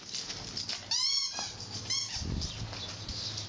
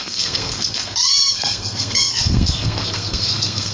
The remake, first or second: second